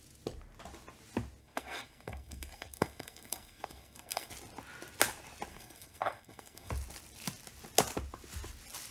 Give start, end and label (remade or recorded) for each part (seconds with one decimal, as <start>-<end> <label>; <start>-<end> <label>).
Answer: 0.0-1.4 recorded; 1.4-4.3 remade; 4.3-5.5 recorded; 5.5-6.7 remade; 6.7-8.9 recorded